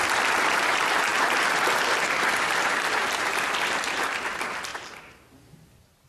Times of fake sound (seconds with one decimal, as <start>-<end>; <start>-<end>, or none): 1.1-4.1; 4.7-5.3